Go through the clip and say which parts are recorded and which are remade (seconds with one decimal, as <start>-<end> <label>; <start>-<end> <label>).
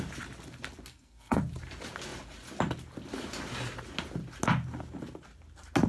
0.0-0.9 recorded; 0.9-1.4 remade; 1.4-5.9 recorded